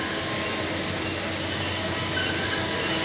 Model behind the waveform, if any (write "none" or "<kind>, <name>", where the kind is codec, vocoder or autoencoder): none